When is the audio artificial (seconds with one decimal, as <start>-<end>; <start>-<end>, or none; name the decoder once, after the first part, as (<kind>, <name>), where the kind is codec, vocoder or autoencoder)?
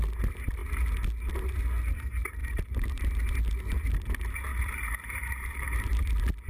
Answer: 2.4-3.1 (vocoder, BigVGAN v2); 4.5-6.1